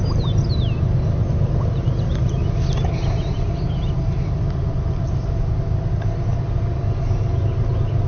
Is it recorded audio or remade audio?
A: recorded